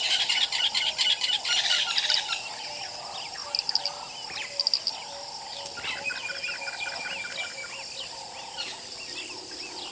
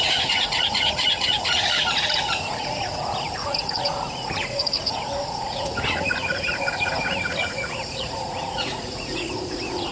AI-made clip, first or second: second